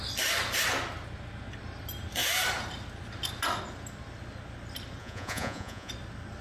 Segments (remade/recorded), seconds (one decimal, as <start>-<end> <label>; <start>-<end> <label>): 0.0-5.0 recorded; 5.0-5.9 remade; 5.9-6.4 recorded